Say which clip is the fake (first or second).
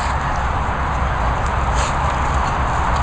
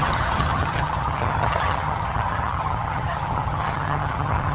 second